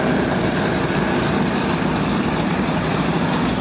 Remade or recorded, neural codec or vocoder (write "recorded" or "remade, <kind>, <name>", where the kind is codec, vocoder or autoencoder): remade, vocoder, BigVGAN v2